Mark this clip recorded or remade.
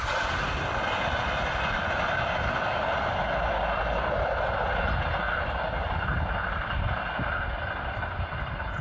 recorded